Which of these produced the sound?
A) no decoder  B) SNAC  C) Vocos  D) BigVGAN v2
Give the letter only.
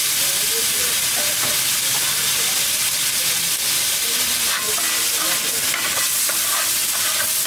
A